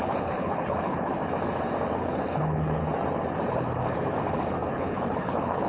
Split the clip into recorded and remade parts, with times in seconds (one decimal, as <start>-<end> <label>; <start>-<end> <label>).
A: 0.0-1.2 remade; 1.2-1.9 recorded; 1.9-2.8 remade; 2.8-3.5 recorded; 3.5-5.7 remade